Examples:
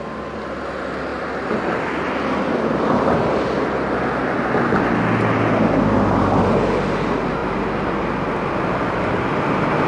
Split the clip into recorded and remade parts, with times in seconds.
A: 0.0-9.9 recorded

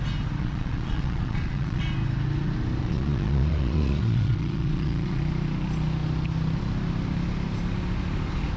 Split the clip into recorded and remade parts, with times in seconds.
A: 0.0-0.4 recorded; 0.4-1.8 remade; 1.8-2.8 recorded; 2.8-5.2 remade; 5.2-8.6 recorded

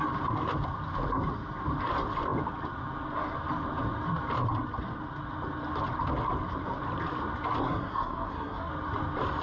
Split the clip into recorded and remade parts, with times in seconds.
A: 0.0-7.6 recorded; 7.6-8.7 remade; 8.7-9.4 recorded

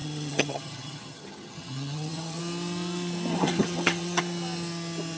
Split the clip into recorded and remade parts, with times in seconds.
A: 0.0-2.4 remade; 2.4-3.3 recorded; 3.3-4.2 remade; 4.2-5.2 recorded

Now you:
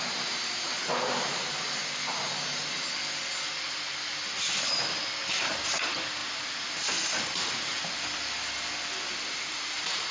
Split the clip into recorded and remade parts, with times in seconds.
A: 0.0-0.7 remade; 0.7-5.3 recorded; 5.3-7.7 remade; 7.7-9.1 recorded; 9.1-10.1 remade

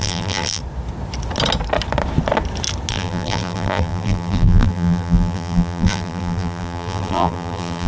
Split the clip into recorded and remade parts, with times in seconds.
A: 0.0-0.6 remade; 0.6-2.9 recorded; 2.9-7.9 remade

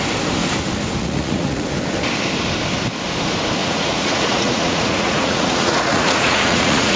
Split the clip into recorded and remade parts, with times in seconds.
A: 0.0-1.0 recorded; 1.0-1.7 remade; 1.7-3.6 recorded; 3.6-7.0 remade

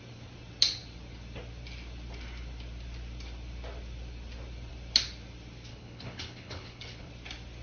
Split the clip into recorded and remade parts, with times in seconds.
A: 0.0-5.7 recorded; 5.7-7.1 remade; 7.1-7.6 recorded